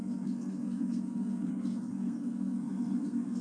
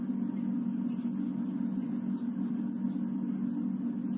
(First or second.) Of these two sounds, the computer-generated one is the first